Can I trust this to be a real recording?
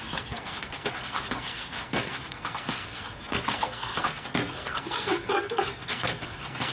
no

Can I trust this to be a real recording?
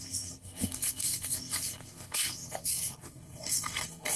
no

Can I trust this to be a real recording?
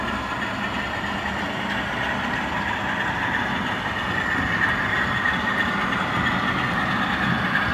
yes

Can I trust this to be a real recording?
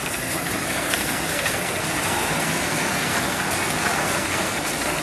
no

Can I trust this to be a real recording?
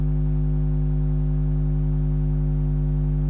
yes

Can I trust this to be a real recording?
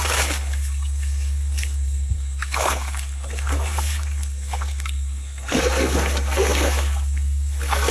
no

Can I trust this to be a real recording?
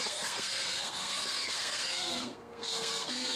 no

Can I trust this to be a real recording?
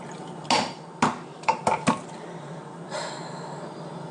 yes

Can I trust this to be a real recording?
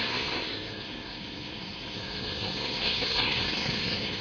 no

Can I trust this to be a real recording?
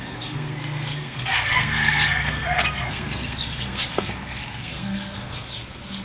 no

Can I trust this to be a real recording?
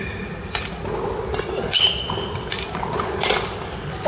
yes